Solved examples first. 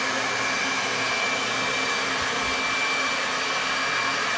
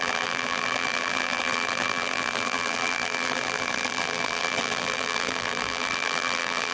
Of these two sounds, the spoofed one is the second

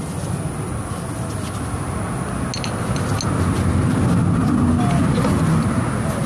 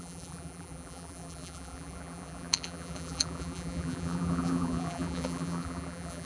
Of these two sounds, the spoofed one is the second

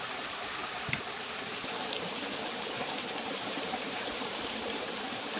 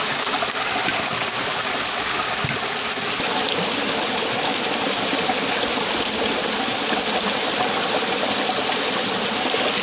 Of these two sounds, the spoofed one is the first